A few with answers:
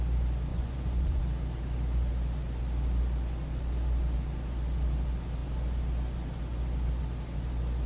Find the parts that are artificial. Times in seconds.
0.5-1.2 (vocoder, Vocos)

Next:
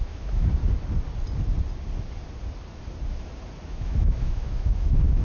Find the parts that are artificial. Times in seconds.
0.0-0.6 (autoencoder, DAC-VAE); 3.7-5.2

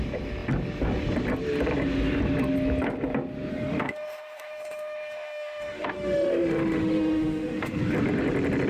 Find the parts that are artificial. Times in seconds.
3.5-7.8 (autoencoder, DAC-VAE)